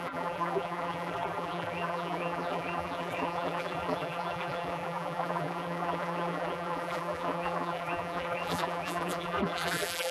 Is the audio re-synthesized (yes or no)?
yes